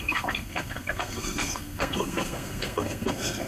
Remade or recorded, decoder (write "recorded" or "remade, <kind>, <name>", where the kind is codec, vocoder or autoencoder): remade, codec, SNAC